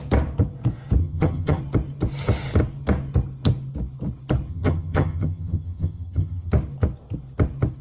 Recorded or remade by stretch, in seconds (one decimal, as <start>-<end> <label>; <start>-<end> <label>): 0.0-1.0 recorded; 1.0-1.6 remade; 1.6-4.5 recorded; 4.5-6.5 remade; 6.5-7.8 recorded